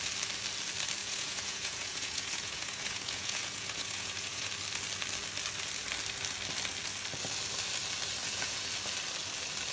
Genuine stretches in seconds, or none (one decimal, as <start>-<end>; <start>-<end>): 0.0-1.0; 4.5-8.2; 8.7-9.7